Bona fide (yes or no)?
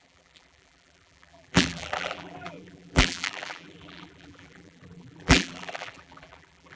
no